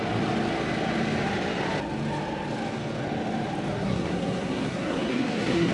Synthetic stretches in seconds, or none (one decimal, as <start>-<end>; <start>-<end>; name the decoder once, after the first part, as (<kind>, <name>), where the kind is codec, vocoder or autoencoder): 3.7-5.7 (codec, SNAC)